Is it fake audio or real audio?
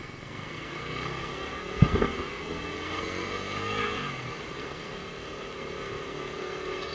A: fake